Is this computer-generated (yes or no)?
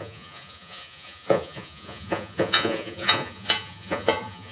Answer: yes